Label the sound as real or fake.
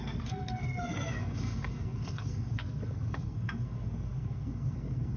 fake